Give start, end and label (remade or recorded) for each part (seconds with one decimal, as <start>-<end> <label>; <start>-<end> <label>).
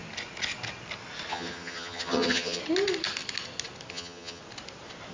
0.0-1.3 recorded; 1.3-2.6 remade; 2.6-3.9 recorded; 3.9-4.4 remade; 4.4-5.1 recorded